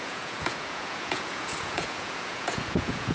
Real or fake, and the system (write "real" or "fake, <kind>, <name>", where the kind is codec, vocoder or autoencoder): fake, vocoder, Vocos